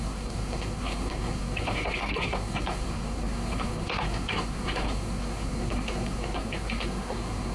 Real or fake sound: fake